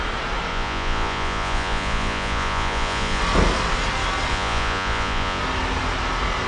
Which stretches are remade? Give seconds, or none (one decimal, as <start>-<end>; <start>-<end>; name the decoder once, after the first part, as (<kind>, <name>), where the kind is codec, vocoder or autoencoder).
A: 0.5-3.2 (vocoder, Vocos); 4.3-5.4